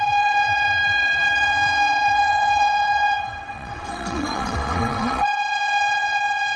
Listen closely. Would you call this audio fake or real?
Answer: fake